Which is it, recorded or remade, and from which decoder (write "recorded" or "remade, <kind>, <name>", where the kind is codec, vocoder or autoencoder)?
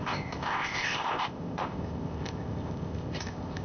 remade, codec, ZipCodec